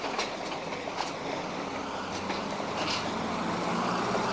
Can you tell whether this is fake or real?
real